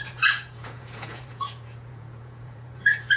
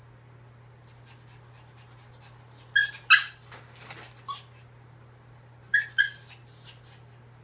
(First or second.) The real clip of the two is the second